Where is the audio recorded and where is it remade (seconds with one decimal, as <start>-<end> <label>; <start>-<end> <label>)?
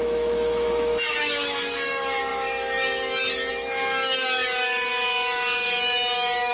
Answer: 0.0-6.5 remade